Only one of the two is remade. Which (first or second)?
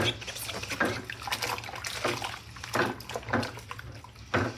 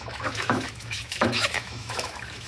second